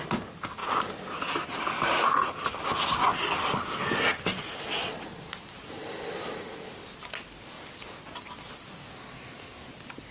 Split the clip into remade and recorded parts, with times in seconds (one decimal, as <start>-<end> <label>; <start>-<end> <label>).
0.0-9.0 recorded; 9.0-9.7 remade; 9.7-10.1 recorded